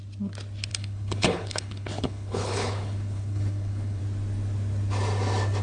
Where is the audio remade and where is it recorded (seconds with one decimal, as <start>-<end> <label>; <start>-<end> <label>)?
0.0-0.7 recorded; 0.7-4.0 remade; 4.0-5.6 recorded